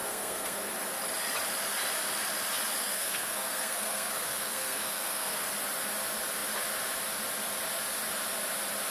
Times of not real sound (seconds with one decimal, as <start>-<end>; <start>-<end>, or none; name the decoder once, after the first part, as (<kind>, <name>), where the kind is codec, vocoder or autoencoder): 0.0-0.6 (codec, SNAC); 2.8-5.5